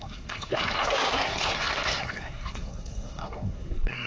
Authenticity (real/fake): fake